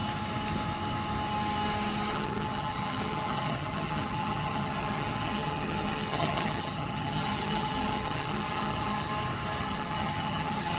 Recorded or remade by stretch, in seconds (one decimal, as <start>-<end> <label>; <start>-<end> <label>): 0.0-2.1 recorded; 2.1-9.1 remade; 9.1-9.6 recorded; 9.6-10.8 remade